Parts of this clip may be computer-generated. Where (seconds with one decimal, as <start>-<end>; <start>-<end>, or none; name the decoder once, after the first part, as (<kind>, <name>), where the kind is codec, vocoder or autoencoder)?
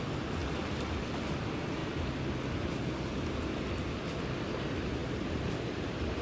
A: none